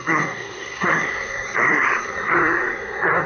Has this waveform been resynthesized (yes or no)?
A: yes